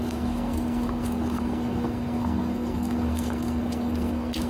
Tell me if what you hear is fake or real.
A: fake